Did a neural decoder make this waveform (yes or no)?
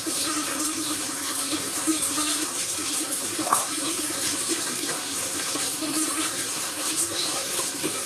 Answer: yes